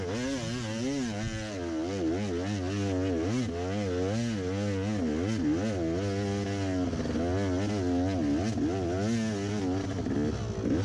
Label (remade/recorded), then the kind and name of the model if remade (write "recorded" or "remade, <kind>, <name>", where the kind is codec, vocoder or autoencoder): recorded